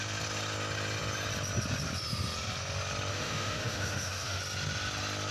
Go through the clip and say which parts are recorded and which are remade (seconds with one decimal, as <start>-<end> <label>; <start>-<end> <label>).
0.0-3.1 recorded; 3.1-4.4 remade; 4.4-5.3 recorded

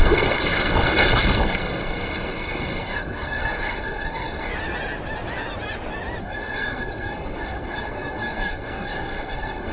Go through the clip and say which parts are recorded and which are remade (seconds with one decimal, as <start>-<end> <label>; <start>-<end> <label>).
0.0-4.5 remade; 4.5-6.2 recorded; 6.2-9.7 remade